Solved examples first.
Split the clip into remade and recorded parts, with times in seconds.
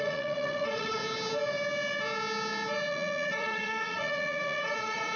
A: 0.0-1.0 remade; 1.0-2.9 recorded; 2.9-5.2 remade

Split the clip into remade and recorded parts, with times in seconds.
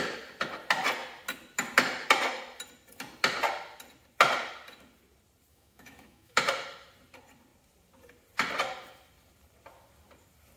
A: 0.0-5.5 recorded; 5.5-6.4 remade; 6.4-10.6 recorded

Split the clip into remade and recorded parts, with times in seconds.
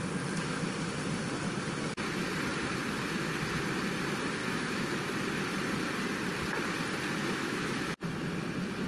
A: 0.0-4.4 recorded; 4.4-4.9 remade; 4.9-7.2 recorded; 7.2-7.9 remade; 7.9-8.9 recorded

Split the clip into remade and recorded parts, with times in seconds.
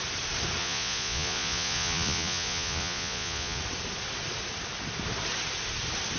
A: 0.0-0.6 recorded; 0.6-3.6 remade; 3.6-6.2 recorded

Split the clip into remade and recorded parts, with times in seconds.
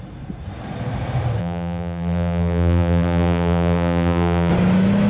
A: 0.0-1.4 recorded; 1.4-4.5 remade; 4.5-5.1 recorded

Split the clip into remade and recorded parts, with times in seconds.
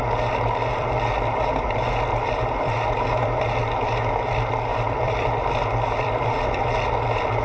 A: 0.0-2.1 recorded; 2.1-3.0 remade; 3.0-4.7 recorded; 4.7-6.5 remade; 6.5-7.4 recorded